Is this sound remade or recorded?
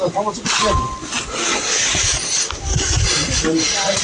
recorded